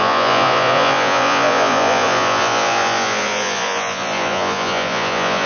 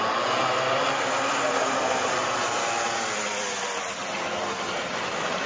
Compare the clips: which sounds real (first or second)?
second